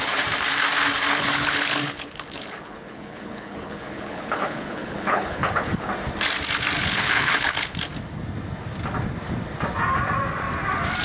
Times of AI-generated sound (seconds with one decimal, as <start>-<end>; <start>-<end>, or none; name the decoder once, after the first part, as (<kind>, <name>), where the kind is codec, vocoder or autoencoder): 1.2-5.9 (codec, HILCodec); 6.8-7.9